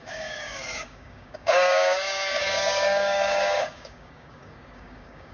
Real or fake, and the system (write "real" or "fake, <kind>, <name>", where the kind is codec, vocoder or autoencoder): fake, codec, DAC